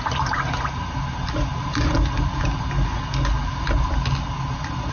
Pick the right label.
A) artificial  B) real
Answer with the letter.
B